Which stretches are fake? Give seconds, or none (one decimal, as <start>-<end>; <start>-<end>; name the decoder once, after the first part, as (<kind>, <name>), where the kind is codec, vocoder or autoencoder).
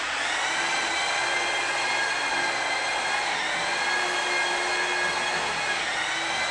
none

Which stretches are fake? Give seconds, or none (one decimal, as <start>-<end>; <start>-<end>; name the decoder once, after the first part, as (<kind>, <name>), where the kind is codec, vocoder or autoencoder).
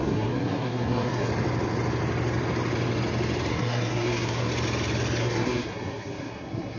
0.0-1.3 (codec, SNAC); 3.5-4.5; 5.2-6.8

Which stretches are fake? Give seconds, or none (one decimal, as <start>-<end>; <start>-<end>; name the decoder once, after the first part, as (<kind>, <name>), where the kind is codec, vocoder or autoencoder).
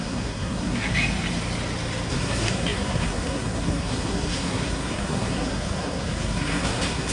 0.0-0.9 (codec, SNAC); 2.1-7.1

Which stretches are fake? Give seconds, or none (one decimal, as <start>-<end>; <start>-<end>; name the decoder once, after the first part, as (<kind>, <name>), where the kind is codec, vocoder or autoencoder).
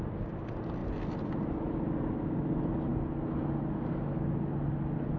none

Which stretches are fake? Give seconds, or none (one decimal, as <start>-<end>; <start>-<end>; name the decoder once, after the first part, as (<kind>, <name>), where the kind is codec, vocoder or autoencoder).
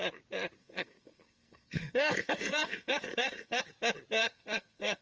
0.6-3.6 (codec, SNAC); 4.2-5.0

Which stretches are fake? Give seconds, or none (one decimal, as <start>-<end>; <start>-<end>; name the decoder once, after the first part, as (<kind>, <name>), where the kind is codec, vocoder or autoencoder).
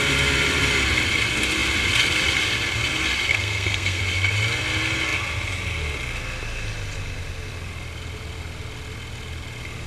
3.3-4.0 (codec, SNAC)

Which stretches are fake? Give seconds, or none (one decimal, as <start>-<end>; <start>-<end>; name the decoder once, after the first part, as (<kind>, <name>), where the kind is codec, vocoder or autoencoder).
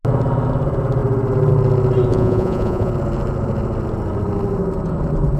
2.1-2.9 (vocoder, Vocos)